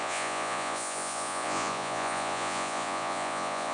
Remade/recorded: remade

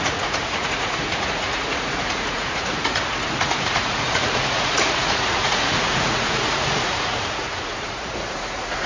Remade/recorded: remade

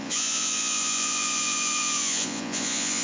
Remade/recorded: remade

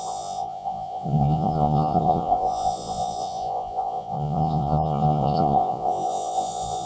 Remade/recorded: remade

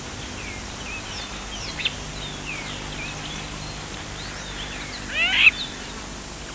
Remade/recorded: recorded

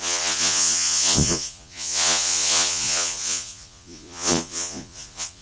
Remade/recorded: remade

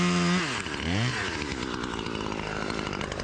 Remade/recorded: recorded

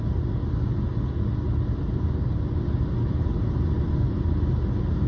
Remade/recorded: recorded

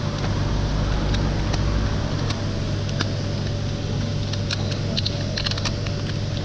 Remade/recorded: recorded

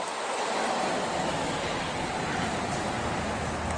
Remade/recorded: recorded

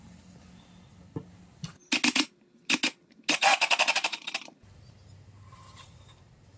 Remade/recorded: recorded